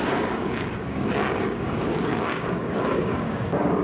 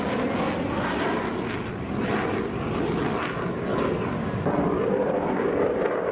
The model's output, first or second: first